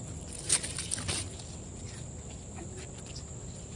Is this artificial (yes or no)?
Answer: no